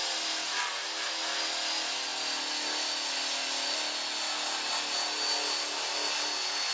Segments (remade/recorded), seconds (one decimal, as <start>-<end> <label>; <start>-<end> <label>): 0.0-6.7 recorded

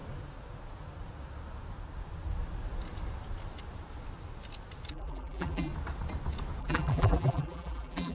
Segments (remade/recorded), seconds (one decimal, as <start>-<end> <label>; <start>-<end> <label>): 0.0-4.9 recorded; 4.9-5.7 remade; 5.7-6.6 recorded; 6.6-8.1 remade

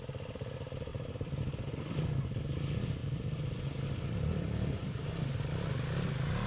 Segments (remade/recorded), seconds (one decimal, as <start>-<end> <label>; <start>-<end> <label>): 0.0-0.9 recorded; 0.9-1.9 remade; 1.9-3.0 recorded; 3.0-5.6 remade; 5.6-6.5 recorded

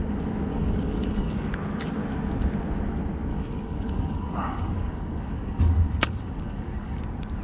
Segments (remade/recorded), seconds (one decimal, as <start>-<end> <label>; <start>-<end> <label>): 0.0-0.5 recorded; 0.5-1.5 remade; 1.5-3.3 recorded; 3.3-7.0 remade; 7.0-7.4 recorded

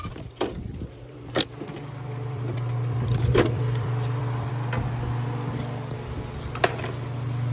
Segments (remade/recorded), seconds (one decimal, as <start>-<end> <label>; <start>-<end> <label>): 0.0-4.5 remade; 4.5-7.5 recorded

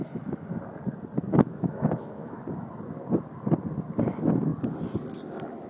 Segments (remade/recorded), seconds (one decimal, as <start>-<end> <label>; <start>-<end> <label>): 0.0-1.3 recorded; 1.3-2.4 remade; 2.4-5.7 recorded